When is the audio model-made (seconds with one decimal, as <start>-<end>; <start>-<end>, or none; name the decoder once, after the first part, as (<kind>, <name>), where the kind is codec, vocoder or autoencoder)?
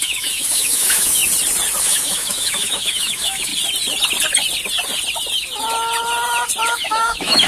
0.0-1.2 (autoencoder, DAC-VAE); 1.8-3.5; 6.7-7.5